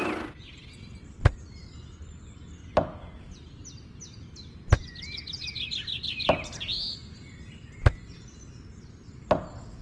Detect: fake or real real